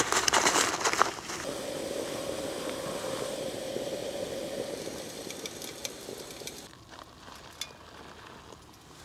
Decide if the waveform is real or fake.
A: real